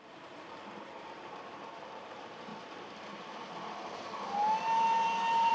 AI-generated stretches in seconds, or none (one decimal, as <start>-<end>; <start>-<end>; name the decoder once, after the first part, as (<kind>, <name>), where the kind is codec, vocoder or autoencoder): 0.0-2.5 (vocoder, BigVGAN v2)